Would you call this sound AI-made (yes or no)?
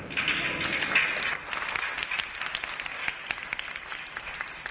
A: no